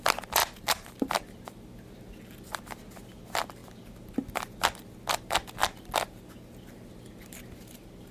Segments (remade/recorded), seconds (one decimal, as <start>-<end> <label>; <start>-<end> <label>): 0.0-0.4 recorded; 0.4-1.1 remade; 1.1-5.6 recorded; 5.6-6.2 remade; 6.2-8.1 recorded